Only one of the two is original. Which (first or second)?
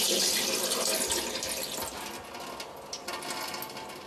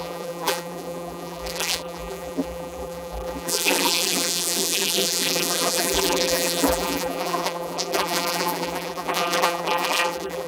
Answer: first